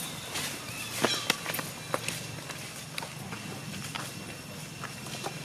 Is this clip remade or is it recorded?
recorded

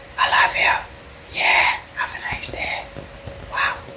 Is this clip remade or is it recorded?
recorded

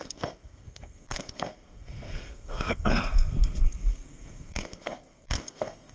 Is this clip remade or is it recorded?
remade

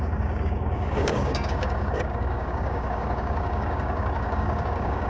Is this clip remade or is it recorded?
remade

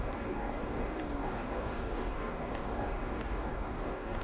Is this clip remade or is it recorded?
remade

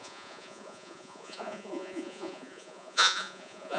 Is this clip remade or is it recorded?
remade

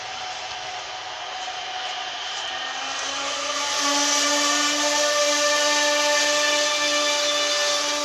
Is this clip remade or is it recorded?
recorded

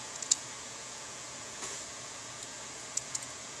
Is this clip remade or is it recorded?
remade